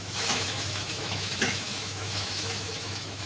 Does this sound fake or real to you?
fake